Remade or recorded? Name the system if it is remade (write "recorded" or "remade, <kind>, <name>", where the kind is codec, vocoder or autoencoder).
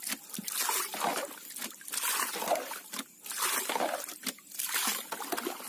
recorded